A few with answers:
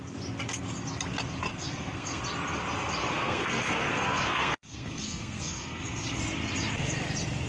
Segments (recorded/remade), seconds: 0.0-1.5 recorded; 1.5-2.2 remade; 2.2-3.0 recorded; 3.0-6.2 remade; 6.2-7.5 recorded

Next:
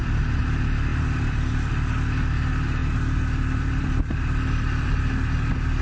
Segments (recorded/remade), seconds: 0.0-0.9 recorded; 0.9-1.7 remade; 1.7-2.8 recorded; 2.8-5.0 remade; 5.0-5.8 recorded

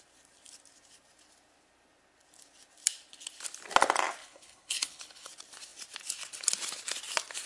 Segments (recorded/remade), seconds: 0.0-4.2 recorded; 4.2-5.3 remade; 5.3-7.5 recorded

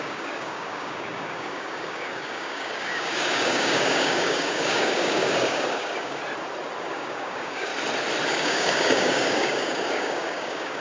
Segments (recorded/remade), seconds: 0.0-6.2 remade; 6.2-6.8 recorded; 6.8-7.7 remade; 7.7-8.3 recorded; 8.3-10.8 remade

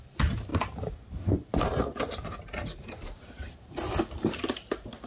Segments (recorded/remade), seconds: 0.0-0.5 recorded; 0.5-1.8 remade; 1.8-2.6 recorded; 2.6-3.7 remade; 3.7-5.1 recorded

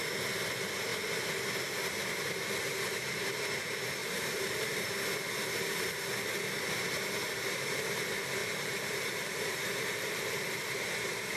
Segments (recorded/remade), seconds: 0.0-4.0 recorded; 4.0-4.9 remade; 4.9-8.4 recorded; 8.4-10.2 remade; 10.2-11.4 recorded

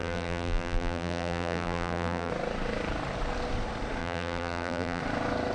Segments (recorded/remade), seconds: 0.0-2.3 remade; 2.3-4.0 recorded; 4.0-5.0 remade; 5.0-5.5 recorded

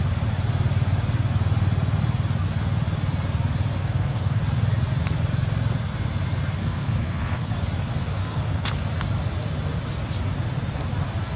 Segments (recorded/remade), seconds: 0.0-3.8 recorded; 3.8-4.4 remade; 4.4-6.6 recorded; 6.6-7.5 remade; 7.5-8.2 recorded; 8.2-8.7 remade; 8.7-11.4 recorded